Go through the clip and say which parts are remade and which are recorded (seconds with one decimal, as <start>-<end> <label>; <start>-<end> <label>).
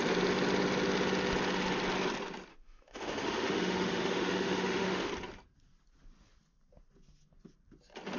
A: 0.0-2.5 recorded; 2.5-5.1 remade; 5.1-8.2 recorded